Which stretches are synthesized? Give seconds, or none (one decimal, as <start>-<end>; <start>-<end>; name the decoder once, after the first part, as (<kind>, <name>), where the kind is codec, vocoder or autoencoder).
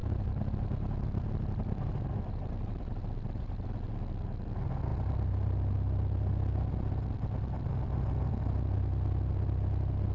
0.0-3.9 (vocoder, BigVGAN v2)